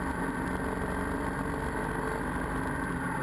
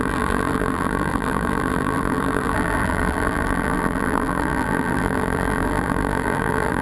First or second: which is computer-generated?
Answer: second